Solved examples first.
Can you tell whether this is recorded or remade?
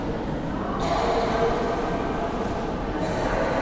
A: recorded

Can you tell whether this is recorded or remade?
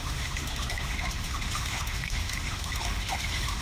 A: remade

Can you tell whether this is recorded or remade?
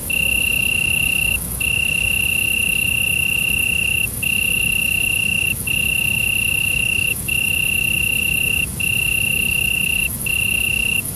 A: remade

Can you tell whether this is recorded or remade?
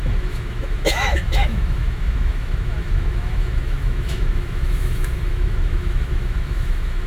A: remade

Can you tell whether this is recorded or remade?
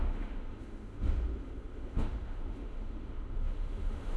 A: remade